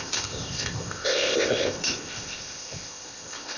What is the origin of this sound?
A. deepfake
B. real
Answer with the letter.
A